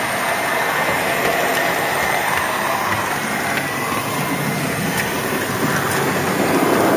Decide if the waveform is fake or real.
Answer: real